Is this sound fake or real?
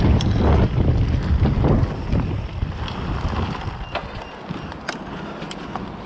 real